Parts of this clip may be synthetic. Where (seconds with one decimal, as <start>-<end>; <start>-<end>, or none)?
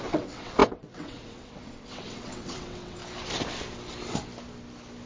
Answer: 0.0-3.0